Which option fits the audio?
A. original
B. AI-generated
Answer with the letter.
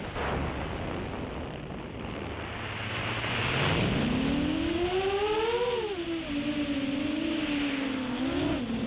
A